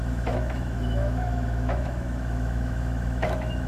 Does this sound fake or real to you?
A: fake